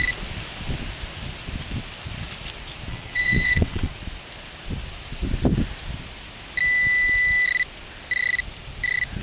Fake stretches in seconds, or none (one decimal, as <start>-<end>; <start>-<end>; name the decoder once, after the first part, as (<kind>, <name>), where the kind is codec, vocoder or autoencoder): 2.9-3.9 (vocoder, WaveNeXt)